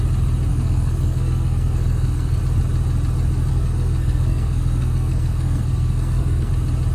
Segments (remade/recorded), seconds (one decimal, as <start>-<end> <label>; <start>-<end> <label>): 0.0-0.5 recorded; 0.5-2.4 remade; 2.4-3.5 recorded; 3.5-6.5 remade; 6.5-6.9 recorded